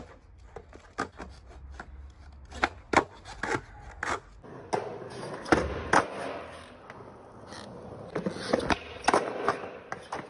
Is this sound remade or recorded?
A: recorded